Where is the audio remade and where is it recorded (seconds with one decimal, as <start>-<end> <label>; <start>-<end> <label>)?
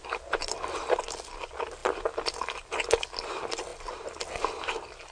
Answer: 0.0-5.1 recorded